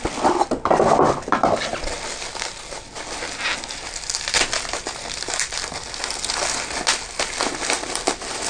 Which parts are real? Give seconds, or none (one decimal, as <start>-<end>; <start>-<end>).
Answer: 0.0-8.5